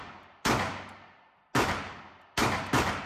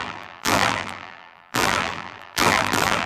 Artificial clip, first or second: second